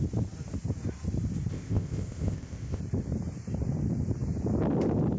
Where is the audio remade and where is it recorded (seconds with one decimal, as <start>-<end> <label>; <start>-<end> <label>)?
0.0-1.5 recorded; 1.5-2.8 remade; 2.8-5.2 recorded